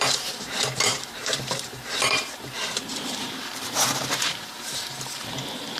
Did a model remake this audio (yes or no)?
yes